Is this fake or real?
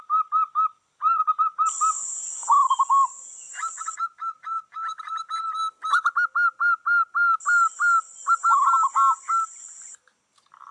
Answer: real